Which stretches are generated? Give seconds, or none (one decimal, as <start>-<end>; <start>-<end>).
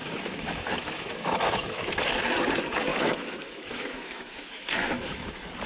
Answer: 0.0-1.9; 2.9-5.3